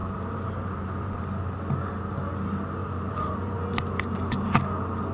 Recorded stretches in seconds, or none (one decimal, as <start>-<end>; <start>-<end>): 1.2-2.8; 3.6-5.1